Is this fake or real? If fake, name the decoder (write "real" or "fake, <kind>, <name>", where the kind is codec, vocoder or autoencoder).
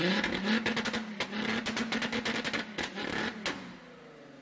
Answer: real